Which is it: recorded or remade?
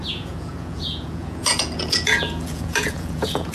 remade